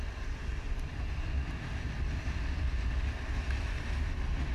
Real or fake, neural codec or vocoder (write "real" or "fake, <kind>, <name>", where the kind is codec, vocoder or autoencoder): real